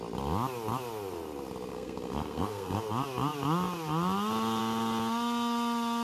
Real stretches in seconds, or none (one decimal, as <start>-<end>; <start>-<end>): 0.0-1.7; 2.8-6.0

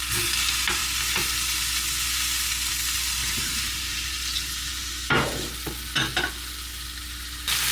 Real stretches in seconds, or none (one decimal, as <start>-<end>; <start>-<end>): 0.0-3.2; 4.7-7.7

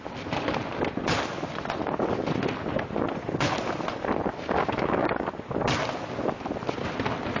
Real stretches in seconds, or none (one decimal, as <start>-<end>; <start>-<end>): 0.0-4.6; 5.3-7.4

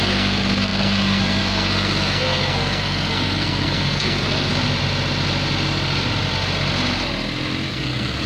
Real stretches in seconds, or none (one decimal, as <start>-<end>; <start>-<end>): 4.5-7.7